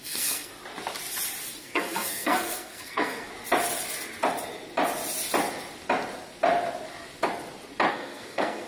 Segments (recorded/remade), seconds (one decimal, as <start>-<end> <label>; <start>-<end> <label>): 0.0-0.5 remade; 0.5-1.6 recorded; 1.6-3.3 remade; 3.3-7.9 recorded; 7.9-8.7 remade